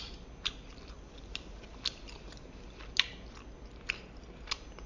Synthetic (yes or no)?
no